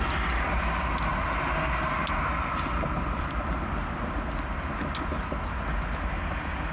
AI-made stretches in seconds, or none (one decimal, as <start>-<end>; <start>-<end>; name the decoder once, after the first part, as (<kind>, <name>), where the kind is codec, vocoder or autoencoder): none